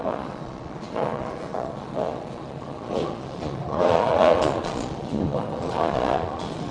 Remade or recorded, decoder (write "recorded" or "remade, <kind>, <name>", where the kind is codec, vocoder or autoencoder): remade, vocoder, Vocos